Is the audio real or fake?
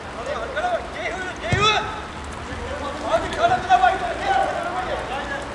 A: real